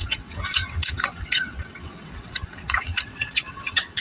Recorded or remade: remade